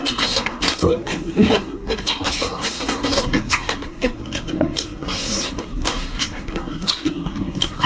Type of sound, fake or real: fake